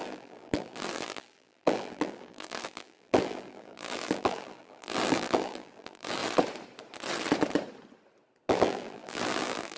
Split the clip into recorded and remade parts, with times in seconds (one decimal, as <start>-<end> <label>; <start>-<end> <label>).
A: 0.0-6.2 remade; 6.2-8.5 recorded; 8.5-9.8 remade